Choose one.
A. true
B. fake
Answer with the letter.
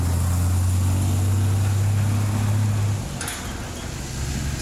A